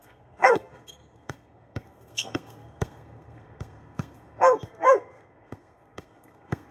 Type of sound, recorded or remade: remade